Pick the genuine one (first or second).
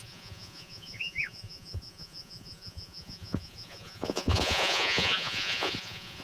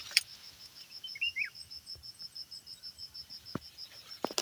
second